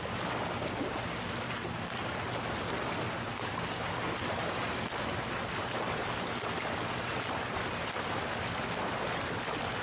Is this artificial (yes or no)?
no